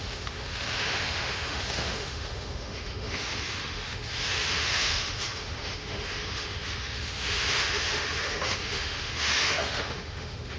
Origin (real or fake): fake